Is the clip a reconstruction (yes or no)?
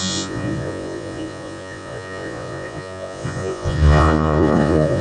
yes